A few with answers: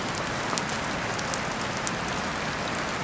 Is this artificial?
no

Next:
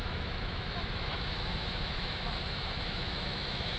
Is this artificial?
yes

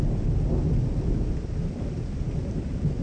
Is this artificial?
no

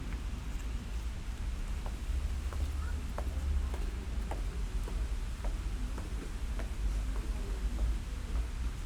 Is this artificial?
no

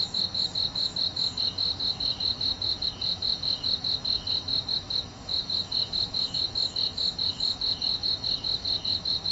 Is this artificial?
yes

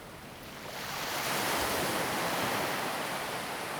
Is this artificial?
no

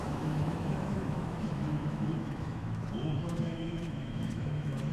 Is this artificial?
yes